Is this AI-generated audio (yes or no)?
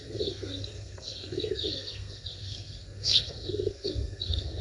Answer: yes